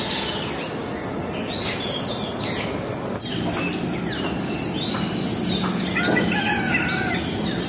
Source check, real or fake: real